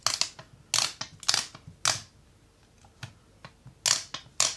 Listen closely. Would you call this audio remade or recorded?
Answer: recorded